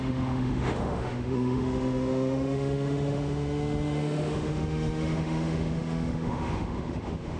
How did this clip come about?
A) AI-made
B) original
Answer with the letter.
A